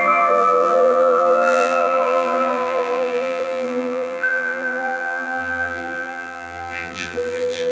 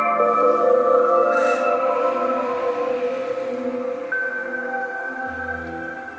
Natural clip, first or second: second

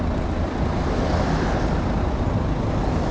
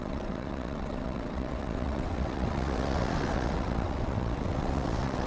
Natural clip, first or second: first